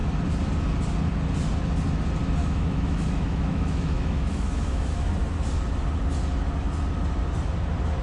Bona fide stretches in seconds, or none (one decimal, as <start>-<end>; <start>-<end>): 0.0-2.4; 5.1-8.0